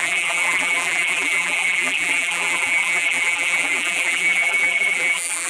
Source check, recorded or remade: remade